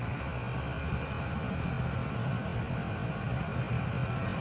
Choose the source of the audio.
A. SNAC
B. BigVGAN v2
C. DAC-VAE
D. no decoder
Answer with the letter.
D